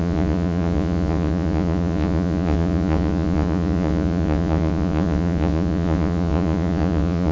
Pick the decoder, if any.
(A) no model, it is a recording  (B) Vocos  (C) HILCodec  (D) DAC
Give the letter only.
B